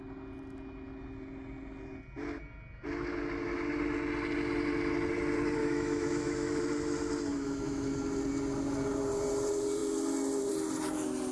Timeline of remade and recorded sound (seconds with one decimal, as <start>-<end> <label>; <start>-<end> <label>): 0.0-5.6 recorded; 5.6-6.6 remade; 6.6-7.3 recorded; 7.3-7.9 remade; 7.9-11.3 recorded